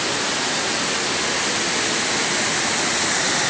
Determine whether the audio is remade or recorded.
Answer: recorded